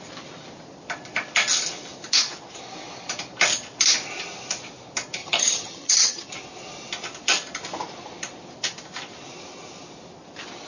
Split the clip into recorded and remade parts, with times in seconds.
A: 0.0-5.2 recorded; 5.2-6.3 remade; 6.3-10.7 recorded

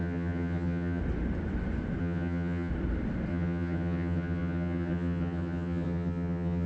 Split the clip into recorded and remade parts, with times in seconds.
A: 0.0-1.0 remade; 1.0-2.0 recorded; 2.0-2.7 remade; 2.7-3.3 recorded; 3.3-6.7 remade

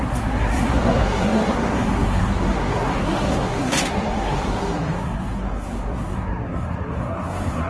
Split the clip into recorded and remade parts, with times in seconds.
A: 0.0-7.7 remade

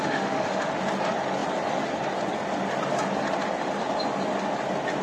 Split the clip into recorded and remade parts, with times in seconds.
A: 0.0-0.7 remade; 0.7-5.0 recorded

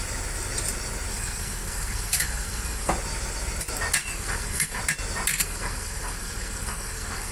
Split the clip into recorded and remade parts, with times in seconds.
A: 0.0-1.1 recorded; 1.1-2.9 remade; 2.9-4.0 recorded; 4.0-4.8 remade; 4.8-5.3 recorded; 5.3-7.3 remade